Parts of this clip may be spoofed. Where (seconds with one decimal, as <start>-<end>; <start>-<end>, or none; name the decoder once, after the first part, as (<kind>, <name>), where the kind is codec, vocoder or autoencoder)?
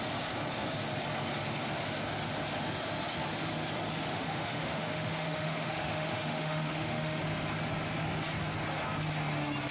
4.1-7.2 (autoencoder, DAC-VAE)